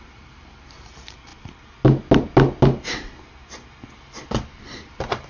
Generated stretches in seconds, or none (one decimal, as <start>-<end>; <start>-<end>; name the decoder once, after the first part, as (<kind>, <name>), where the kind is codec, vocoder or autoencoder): 0.0-1.3 (vocoder, BigVGAN v2); 4.5-5.3